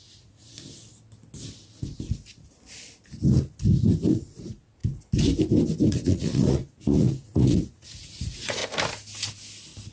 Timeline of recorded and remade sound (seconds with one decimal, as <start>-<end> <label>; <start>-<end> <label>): 0.0-0.8 remade; 0.8-4.1 recorded; 4.1-4.8 remade; 4.8-5.9 recorded; 5.9-8.6 remade; 8.6-9.9 recorded